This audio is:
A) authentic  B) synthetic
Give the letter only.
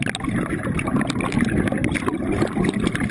A